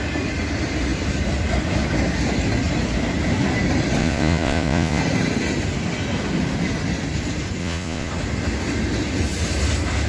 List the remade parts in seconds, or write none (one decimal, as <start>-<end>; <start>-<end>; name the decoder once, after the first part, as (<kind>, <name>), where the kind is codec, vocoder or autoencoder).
4.0-5.0 (vocoder, Vocos); 7.6-8.1